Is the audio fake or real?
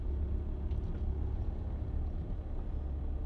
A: real